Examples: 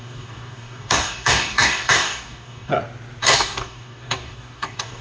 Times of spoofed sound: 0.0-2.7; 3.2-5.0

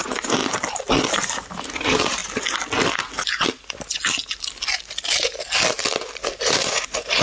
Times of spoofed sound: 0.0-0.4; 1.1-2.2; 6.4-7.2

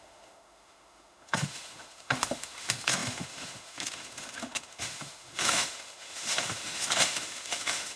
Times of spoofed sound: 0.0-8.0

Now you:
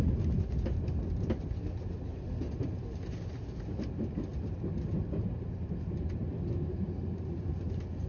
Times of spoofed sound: none